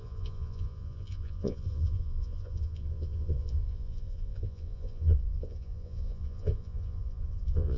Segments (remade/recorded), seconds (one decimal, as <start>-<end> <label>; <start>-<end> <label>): 0.0-7.8 remade